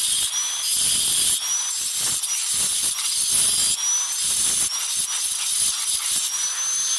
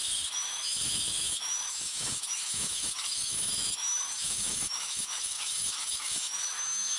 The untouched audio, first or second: first